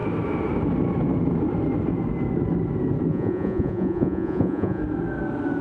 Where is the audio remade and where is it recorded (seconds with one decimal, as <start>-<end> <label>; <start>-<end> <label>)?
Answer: 0.0-3.1 recorded; 3.1-4.8 remade; 4.8-5.6 recorded